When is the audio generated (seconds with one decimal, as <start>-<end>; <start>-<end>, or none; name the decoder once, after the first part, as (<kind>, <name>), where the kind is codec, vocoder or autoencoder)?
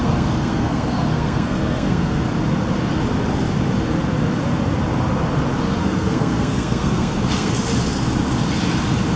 0.0-2.3 (codec, SNAC); 5.8-7.5